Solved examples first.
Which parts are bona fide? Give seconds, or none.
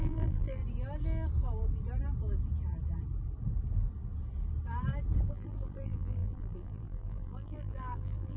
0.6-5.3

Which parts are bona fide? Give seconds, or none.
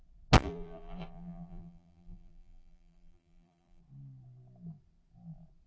0.0-0.4; 3.8-5.7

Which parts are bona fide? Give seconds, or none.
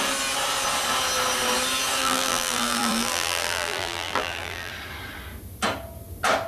0.0-2.0; 4.7-6.5